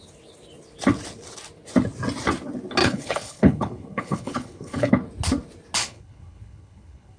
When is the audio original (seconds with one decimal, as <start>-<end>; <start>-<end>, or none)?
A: 0.0-2.8; 4.9-5.8